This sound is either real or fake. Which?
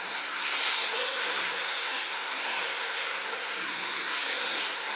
fake